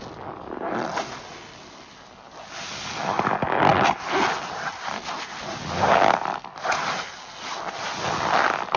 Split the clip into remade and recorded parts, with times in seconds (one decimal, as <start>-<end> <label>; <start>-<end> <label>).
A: 0.0-8.8 recorded